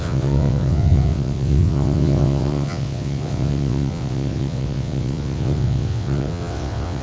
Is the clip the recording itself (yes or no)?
no